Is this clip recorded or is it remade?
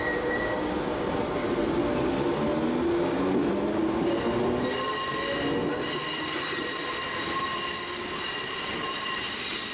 recorded